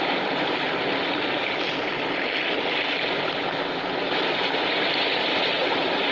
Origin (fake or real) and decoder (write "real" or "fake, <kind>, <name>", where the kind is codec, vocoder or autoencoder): real